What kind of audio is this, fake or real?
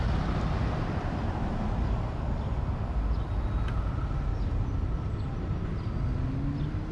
real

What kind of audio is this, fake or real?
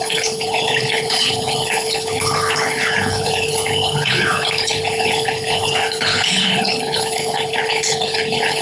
fake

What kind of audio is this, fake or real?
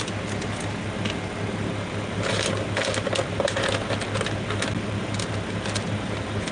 real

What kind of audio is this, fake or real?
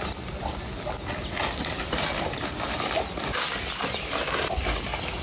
real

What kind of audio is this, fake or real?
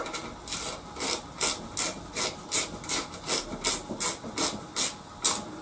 real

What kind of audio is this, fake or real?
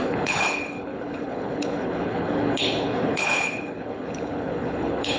fake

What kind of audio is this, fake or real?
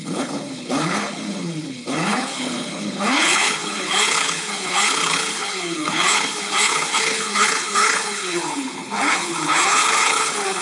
fake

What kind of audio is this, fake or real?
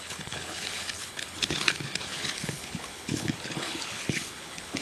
fake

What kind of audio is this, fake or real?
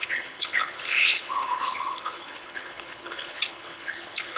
fake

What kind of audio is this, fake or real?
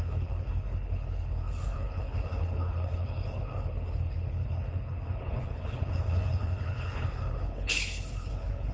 fake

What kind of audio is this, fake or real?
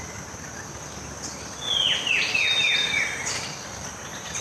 real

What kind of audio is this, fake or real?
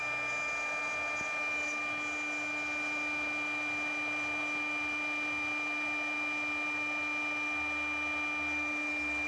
real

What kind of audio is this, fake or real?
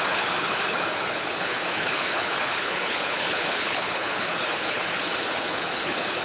fake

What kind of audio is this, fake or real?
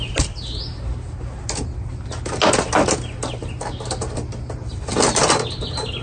real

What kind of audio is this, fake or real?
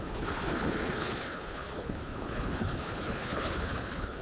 fake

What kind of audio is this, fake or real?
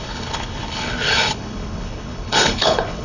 fake